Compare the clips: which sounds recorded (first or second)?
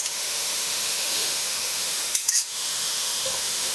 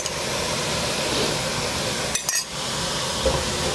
second